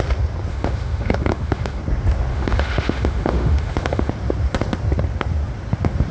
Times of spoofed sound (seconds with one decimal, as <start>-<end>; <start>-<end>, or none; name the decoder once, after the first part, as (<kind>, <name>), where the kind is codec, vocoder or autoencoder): 0.5-1.8 (autoencoder, DAC-VAE); 2.3-4.1